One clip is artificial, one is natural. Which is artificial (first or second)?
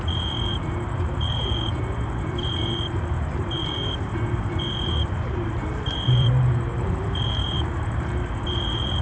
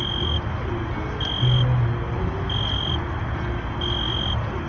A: first